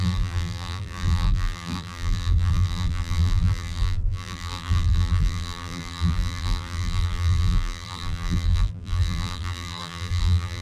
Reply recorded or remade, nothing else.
remade